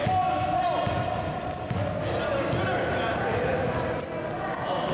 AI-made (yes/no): no